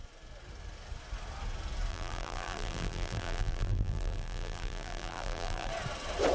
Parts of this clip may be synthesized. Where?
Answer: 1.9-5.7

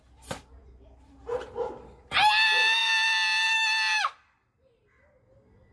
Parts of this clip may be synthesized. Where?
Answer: none

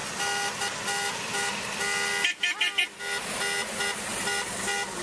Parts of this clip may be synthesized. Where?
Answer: none

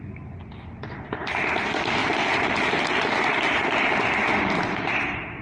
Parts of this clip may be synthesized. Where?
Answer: none

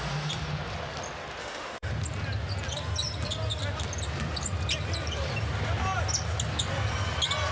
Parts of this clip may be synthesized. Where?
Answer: 1.4-1.9